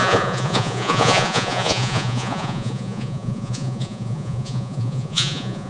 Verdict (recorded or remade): remade